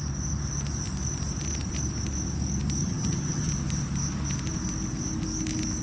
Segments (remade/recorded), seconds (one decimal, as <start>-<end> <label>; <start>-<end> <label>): 0.0-2.8 recorded; 2.8-3.5 remade; 3.5-5.8 recorded